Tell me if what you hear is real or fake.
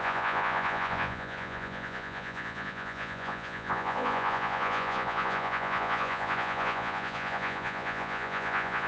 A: fake